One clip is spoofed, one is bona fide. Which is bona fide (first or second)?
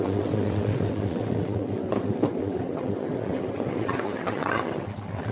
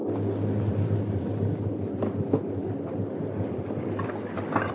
second